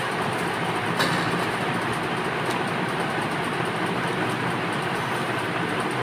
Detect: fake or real real